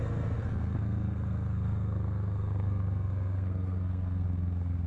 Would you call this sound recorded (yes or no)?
no